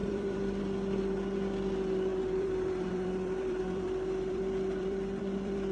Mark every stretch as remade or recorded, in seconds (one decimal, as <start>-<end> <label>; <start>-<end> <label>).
0.0-0.6 remade; 0.6-2.1 recorded; 2.1-5.7 remade